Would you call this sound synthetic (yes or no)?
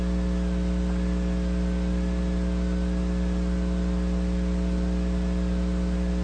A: no